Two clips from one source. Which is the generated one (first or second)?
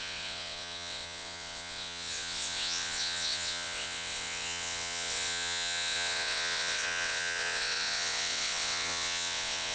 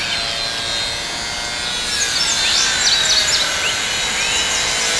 first